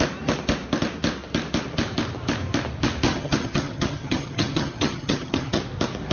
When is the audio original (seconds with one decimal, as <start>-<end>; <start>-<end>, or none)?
0.0-3.1; 5.6-6.1